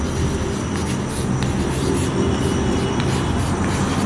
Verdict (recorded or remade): recorded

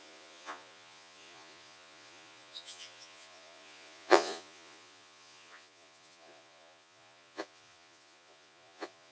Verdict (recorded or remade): remade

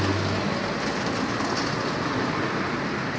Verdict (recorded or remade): recorded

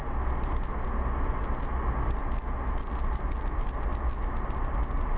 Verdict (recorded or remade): recorded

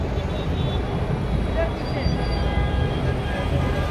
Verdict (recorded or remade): recorded